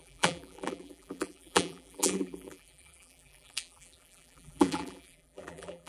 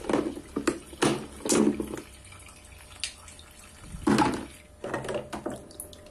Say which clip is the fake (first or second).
first